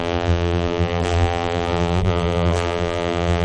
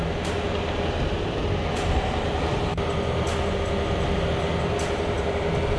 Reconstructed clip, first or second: first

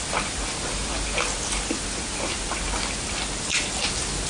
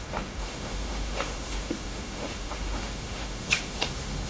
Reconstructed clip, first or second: second